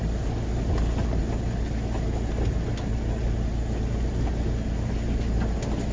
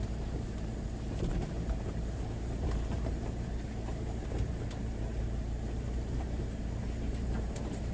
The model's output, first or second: second